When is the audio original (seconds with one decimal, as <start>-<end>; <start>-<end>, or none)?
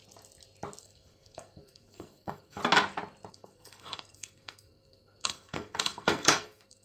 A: 0.0-0.8; 2.6-3.3